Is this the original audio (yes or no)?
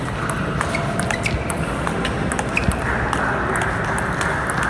yes